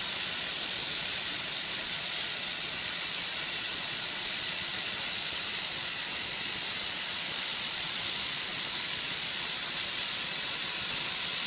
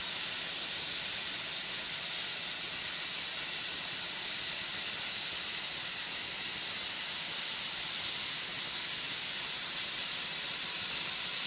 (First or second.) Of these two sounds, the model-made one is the first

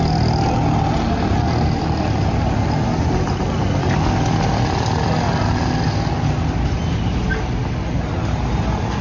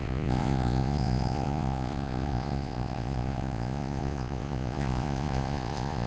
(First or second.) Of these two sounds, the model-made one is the second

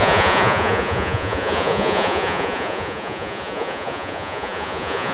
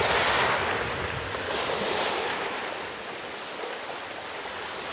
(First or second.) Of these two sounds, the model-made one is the first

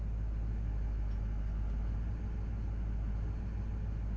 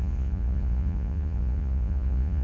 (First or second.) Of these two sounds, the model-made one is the second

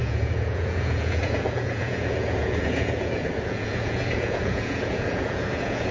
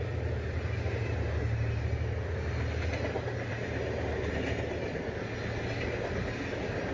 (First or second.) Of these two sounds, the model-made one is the first